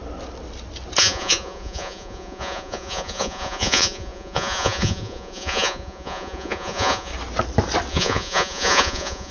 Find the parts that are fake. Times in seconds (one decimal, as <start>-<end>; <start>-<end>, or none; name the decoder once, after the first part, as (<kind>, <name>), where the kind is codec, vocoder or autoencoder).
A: 1.0-7.1 (vocoder, Vocos); 7.9-9.3